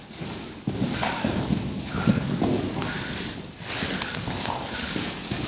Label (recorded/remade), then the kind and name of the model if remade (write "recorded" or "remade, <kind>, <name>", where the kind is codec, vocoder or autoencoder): remade, codec, DAC